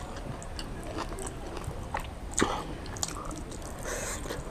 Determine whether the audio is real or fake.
real